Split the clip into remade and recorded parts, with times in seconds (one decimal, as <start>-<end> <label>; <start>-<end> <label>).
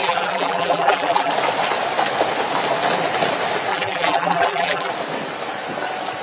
0.0-1.3 remade; 1.3-3.7 recorded; 3.7-4.9 remade; 4.9-6.2 recorded